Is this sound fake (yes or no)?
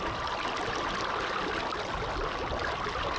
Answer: no